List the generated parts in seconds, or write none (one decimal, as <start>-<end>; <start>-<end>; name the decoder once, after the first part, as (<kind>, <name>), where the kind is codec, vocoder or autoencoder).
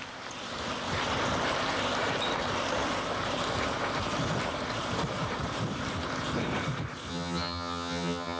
7.1-8.4 (vocoder, HiFi-GAN)